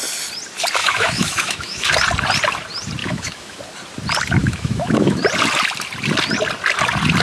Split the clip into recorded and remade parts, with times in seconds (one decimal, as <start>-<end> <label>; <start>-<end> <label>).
0.0-0.8 recorded; 0.8-1.9 remade; 1.9-3.0 recorded; 3.0-3.6 remade; 3.6-4.4 recorded; 4.4-5.2 remade; 5.2-7.2 recorded